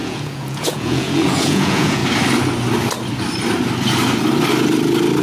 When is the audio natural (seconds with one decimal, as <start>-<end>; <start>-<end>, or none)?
2.0-5.2